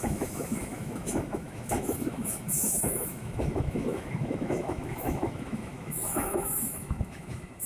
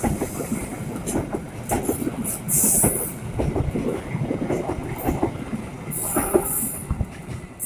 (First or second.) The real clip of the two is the second